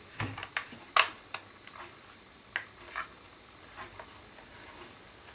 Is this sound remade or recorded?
recorded